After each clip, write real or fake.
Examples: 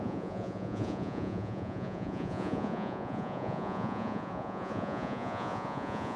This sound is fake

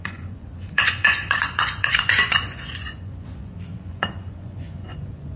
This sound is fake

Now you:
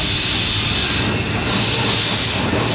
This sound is real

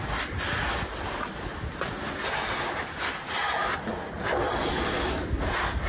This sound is real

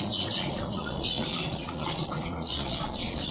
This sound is fake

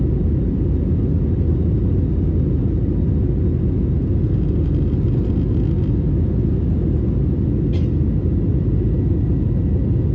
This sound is real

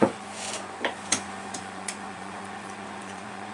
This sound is fake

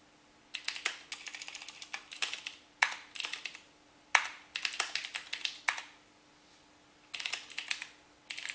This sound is real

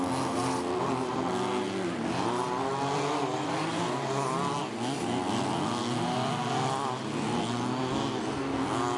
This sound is real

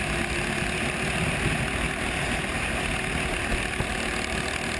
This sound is real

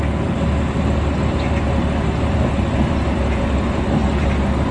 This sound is real